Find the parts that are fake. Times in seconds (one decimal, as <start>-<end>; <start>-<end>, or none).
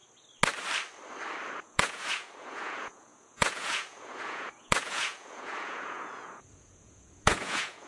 1.5-7.9